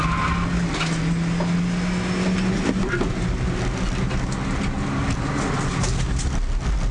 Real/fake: real